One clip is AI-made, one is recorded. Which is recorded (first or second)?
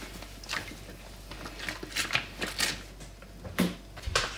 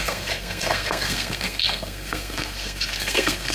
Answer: first